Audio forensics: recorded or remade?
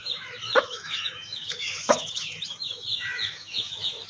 remade